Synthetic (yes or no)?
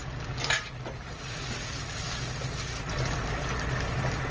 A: no